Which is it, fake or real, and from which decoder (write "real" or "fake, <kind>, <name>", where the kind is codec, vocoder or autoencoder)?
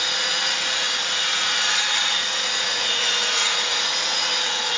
fake, vocoder, Vocos